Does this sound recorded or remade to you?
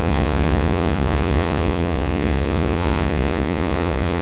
remade